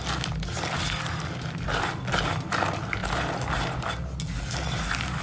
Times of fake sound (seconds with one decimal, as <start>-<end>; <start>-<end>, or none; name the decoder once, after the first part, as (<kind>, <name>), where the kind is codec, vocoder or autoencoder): none